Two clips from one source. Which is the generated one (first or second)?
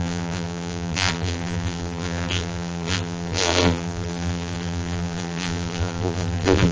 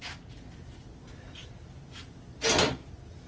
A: first